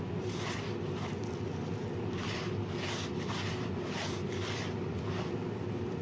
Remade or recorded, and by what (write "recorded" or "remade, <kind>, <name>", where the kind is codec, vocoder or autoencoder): recorded